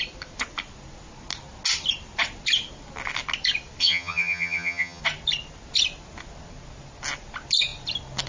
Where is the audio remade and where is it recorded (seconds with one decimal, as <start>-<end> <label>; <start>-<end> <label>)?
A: 0.0-3.8 recorded; 3.8-5.0 remade; 5.0-8.3 recorded